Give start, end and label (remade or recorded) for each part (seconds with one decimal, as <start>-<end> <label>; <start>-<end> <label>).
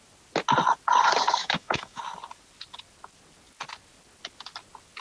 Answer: 0.0-1.4 recorded; 1.4-2.0 remade; 2.0-5.0 recorded